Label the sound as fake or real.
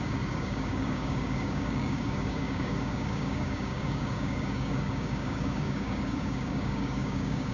fake